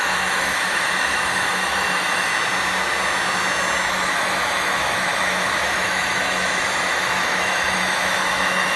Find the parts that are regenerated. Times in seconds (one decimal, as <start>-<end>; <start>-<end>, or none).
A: 0.0-2.3; 3.9-8.8